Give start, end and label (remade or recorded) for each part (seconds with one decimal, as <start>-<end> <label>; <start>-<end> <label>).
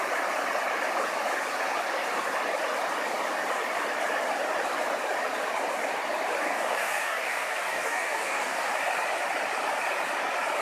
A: 0.0-6.4 recorded; 6.4-8.7 remade; 8.7-10.6 recorded